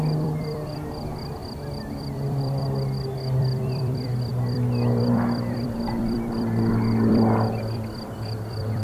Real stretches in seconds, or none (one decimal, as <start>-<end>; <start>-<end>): 1.4-2.0; 2.6-3.4